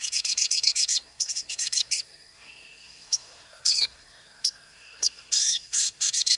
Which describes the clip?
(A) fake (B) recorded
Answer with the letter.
A